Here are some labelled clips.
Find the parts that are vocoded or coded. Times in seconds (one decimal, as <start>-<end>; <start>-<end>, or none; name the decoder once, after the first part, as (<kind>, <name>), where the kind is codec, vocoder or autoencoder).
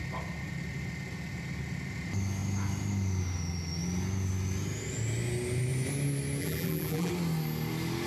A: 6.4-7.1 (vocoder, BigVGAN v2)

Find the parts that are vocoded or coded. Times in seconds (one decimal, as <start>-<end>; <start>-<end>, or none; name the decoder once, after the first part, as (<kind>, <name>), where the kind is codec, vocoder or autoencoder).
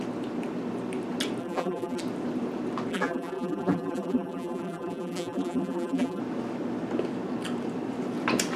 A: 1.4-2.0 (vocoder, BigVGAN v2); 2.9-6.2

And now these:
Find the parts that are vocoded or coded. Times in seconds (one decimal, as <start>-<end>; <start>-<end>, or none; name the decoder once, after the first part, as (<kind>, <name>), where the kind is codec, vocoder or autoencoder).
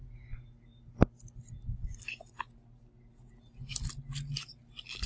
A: none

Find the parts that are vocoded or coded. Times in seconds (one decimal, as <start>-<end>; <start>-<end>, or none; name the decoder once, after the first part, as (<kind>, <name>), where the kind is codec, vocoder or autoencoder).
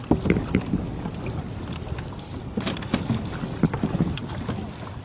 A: none